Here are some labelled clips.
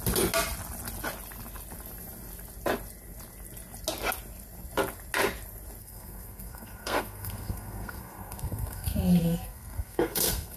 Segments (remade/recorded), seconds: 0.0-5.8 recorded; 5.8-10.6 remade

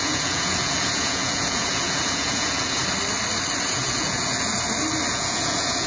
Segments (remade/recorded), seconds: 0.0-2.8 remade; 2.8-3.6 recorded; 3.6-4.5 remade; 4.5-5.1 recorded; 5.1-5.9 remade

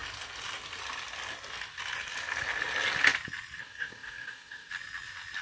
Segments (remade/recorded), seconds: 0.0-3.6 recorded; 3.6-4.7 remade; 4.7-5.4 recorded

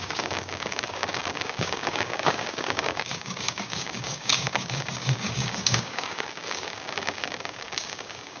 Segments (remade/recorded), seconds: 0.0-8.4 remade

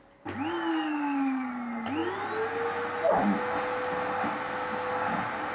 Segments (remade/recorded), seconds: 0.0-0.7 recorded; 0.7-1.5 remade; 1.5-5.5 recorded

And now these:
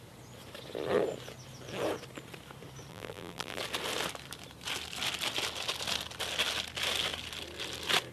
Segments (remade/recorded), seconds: 0.0-2.9 recorded; 2.9-3.6 remade; 3.6-8.1 recorded

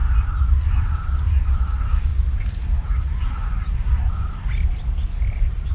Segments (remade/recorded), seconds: 0.0-1.4 remade; 1.4-5.7 recorded